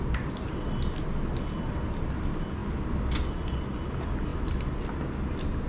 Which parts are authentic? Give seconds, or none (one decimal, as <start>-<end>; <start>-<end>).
0.0-5.7

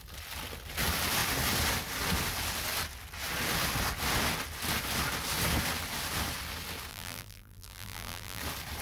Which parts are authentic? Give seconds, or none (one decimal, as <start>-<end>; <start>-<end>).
0.0-6.9; 8.4-8.8

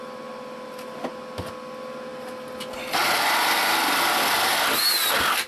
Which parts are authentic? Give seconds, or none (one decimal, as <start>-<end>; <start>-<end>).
0.0-5.5

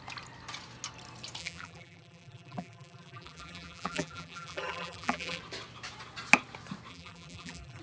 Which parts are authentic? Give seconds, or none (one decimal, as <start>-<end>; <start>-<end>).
0.0-1.4; 5.4-6.9

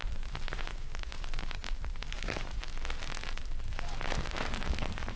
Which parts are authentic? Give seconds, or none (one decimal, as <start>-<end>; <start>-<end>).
2.6-5.2

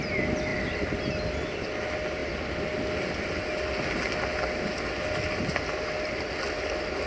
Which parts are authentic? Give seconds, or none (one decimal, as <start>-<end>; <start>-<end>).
0.0-7.1

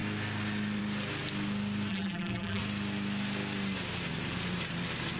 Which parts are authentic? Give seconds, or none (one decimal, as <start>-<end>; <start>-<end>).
0.0-1.9; 2.6-5.2